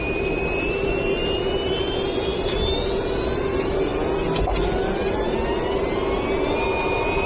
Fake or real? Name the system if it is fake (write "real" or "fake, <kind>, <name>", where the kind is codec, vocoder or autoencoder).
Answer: real